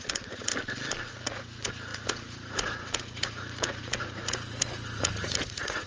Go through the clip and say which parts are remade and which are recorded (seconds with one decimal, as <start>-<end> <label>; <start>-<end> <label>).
0.0-0.5 remade; 0.5-1.1 recorded; 1.1-5.9 remade